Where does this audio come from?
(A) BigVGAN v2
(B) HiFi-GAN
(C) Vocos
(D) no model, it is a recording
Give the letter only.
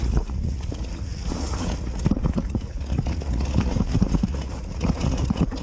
C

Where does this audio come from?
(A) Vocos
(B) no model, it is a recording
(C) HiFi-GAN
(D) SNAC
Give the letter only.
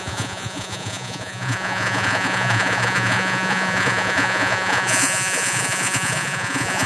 A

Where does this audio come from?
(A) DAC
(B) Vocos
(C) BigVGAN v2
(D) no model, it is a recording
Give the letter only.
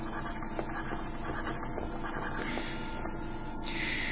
D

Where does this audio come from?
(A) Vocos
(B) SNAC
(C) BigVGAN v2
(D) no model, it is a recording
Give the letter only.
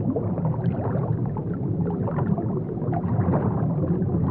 D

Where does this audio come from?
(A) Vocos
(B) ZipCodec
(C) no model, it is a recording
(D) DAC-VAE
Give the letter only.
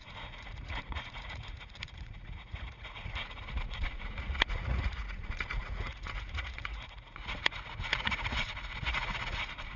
A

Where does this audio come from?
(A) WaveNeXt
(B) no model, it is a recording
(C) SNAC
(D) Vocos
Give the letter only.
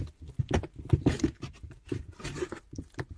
B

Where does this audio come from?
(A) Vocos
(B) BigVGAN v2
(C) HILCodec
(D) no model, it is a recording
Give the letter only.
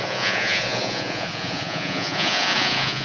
A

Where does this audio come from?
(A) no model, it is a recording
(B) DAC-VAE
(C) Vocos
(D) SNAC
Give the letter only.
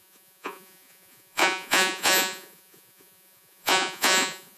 C